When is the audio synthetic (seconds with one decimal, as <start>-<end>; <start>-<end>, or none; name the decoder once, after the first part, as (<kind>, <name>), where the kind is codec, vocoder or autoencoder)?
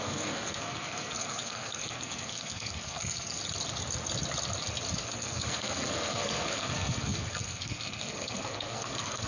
0.0-3.4 (codec, SNAC); 5.0-9.3